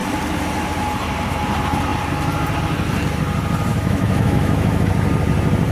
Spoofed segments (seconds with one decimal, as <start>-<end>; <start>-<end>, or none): 3.7-4.9